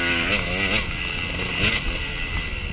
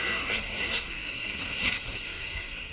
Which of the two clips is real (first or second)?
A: first